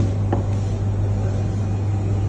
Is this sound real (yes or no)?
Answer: yes